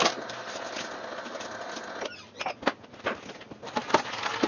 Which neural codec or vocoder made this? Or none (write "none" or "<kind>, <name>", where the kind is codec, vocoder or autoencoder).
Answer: none